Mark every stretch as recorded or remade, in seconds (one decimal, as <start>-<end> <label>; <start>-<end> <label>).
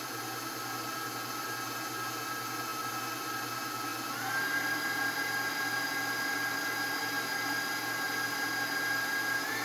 0.0-3.9 recorded; 3.9-5.2 remade; 5.2-9.6 recorded